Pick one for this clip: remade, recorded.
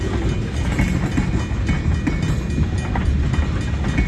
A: recorded